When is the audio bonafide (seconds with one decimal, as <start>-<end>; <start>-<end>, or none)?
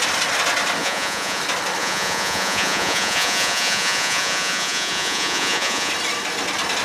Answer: 0.0-0.8; 1.4-1.8; 5.9-6.8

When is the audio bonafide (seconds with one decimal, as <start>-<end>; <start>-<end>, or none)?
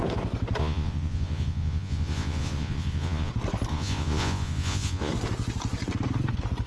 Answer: 0.0-0.6; 3.3-3.7; 5.1-6.7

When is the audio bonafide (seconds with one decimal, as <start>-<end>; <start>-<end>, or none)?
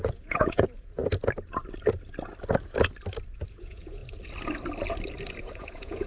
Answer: 1.0-3.5; 4.0-5.4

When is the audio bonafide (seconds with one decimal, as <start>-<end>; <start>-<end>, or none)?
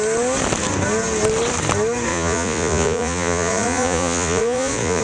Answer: 0.0-2.1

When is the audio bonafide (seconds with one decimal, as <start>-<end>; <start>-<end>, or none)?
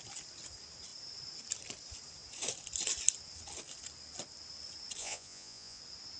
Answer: 0.0-5.0; 5.8-6.2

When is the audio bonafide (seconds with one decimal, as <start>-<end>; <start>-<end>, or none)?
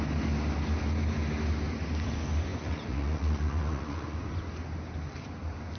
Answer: 0.0-2.5; 4.3-5.8